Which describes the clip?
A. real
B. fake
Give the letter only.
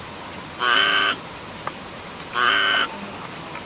A